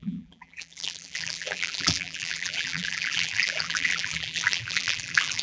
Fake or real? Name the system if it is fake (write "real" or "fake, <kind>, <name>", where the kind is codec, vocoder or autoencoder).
fake, vocoder, BigVGAN v2